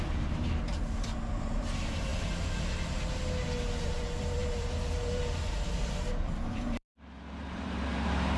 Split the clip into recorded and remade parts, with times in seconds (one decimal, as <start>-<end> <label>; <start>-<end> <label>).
0.0-2.1 remade; 2.1-3.8 recorded; 3.8-8.4 remade